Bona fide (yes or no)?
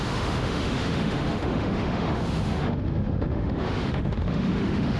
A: no